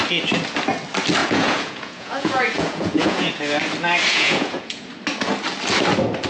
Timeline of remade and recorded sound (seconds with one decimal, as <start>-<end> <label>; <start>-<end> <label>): 0.0-1.2 recorded; 1.2-3.3 remade; 3.3-4.1 recorded; 4.1-4.9 remade; 4.9-6.3 recorded